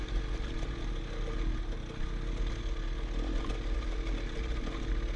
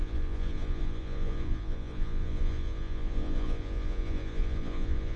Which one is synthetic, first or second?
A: second